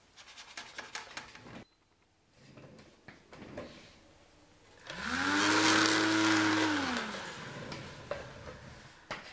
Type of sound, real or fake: real